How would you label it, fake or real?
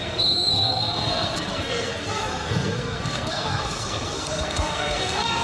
fake